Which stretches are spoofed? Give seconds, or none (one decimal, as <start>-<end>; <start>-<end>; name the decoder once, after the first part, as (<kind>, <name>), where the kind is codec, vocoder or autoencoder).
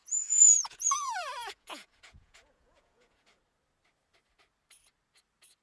0.0-3.4 (vocoder, Vocos)